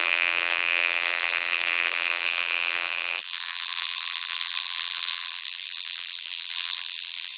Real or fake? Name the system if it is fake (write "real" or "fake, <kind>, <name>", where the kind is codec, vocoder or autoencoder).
fake, vocoder, BigVGAN v2